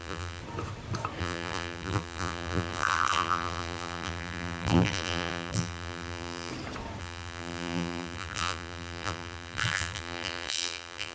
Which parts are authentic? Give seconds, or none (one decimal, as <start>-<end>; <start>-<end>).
0.4-1.2; 6.5-7.0